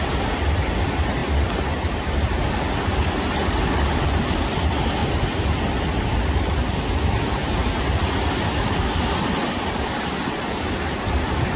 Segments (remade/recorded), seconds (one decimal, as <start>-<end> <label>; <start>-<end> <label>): 0.0-11.6 recorded